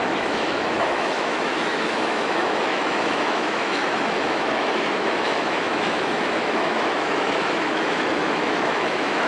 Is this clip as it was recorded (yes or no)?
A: no